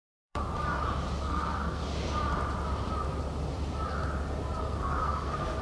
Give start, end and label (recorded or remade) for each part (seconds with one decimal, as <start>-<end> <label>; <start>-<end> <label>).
0.0-0.4 remade; 0.4-1.2 recorded; 1.2-1.8 remade; 1.8-4.6 recorded; 4.6-5.6 remade